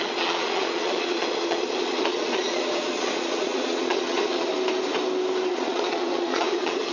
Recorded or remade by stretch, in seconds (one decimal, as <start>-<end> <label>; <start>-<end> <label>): 0.0-4.5 remade; 4.5-5.5 recorded; 5.5-6.9 remade